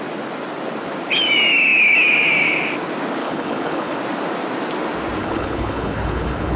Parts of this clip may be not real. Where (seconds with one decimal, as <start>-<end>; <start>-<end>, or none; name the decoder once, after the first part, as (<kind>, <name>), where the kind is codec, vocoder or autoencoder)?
3.2-4.0 (codec, HILCodec); 5.2-6.6